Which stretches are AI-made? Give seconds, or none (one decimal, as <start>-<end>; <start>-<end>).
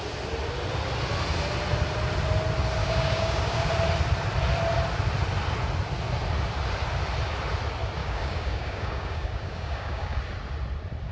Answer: 2.8-3.7; 8.0-10.2